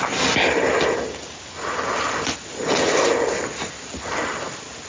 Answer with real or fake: real